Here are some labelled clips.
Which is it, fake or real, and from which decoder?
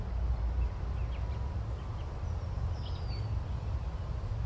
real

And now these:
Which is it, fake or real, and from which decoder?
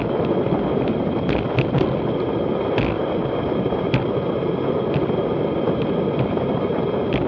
real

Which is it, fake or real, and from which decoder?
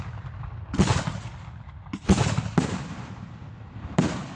real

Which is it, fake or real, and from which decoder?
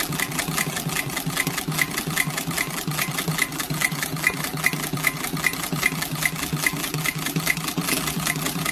fake, vocoder, BigVGAN v2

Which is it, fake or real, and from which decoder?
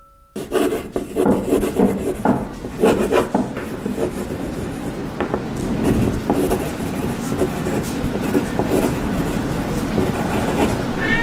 real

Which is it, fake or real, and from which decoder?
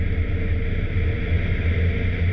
real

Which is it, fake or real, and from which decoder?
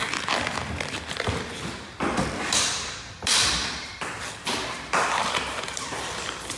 fake, vocoder, BigVGAN v2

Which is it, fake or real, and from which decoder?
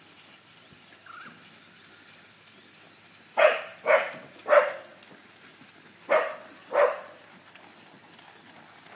real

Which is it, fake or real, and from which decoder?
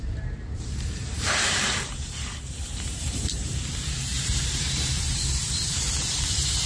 fake, vocoder, BigVGAN v2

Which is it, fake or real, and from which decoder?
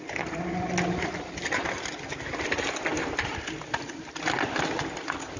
real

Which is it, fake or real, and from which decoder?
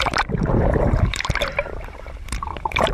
fake, vocoder, BigVGAN v2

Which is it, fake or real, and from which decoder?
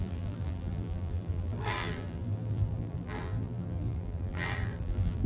fake, vocoder, BigVGAN v2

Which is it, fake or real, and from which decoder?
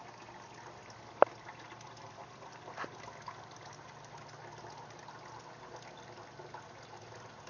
real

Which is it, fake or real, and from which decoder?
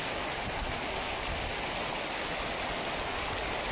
real